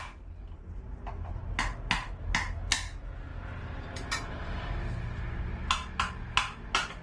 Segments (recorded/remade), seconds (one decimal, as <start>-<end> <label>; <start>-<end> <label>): 0.0-7.0 recorded